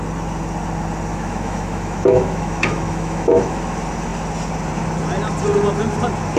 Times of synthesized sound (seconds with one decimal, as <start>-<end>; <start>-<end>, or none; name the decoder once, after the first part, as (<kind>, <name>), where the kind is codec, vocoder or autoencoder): 1.1-3.6 (autoencoder, DAC-VAE)

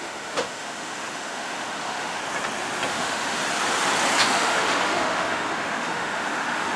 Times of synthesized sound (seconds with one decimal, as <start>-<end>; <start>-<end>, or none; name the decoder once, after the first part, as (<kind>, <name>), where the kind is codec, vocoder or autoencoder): 0.0-2.2 (autoencoder, DAC-VAE); 2.9-3.4; 4.2-6.8

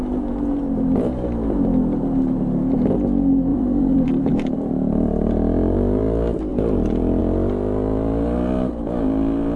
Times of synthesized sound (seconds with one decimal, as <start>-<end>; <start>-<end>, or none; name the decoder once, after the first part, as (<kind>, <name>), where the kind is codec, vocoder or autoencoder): 3.5-4.3 (vocoder, BigVGAN v2); 6.5-7.2

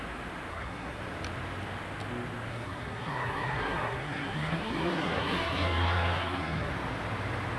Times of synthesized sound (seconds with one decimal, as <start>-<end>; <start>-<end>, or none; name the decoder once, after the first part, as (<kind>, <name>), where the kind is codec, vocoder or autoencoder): 0.5-1.0 (codec, SNAC); 2.5-6.7